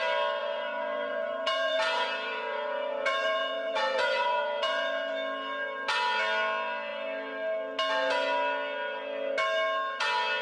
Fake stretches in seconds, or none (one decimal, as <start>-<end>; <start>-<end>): 0.4-5.1